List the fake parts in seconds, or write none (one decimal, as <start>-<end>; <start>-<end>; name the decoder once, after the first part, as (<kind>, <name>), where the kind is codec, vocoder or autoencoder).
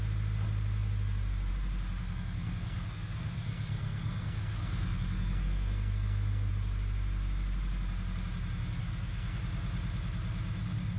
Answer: 2.0-6.5 (codec, SNAC); 8.8-9.4